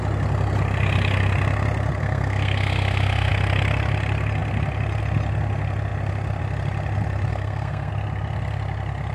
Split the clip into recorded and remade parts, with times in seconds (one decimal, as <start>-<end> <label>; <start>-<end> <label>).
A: 0.0-2.0 recorded; 2.0-3.3 remade; 3.3-7.3 recorded; 7.3-7.9 remade; 7.9-9.1 recorded